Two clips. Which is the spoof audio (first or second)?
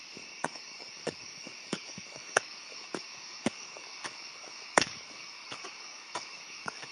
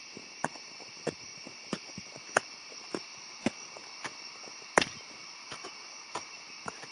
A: first